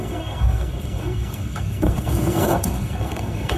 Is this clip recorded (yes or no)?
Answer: no